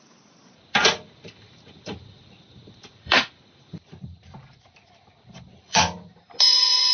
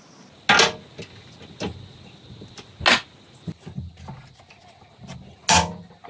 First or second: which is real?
second